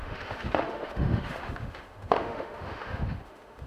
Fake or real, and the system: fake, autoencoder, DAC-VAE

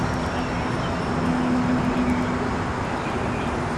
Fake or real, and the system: real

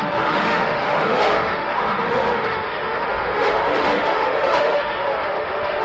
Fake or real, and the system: fake, autoencoder, DAC-VAE